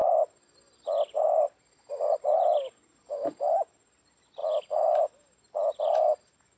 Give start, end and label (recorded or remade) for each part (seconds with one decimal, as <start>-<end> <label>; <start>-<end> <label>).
0.0-6.6 recorded